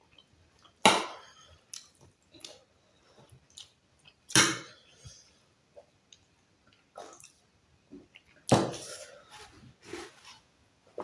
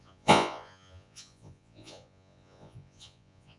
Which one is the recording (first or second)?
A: first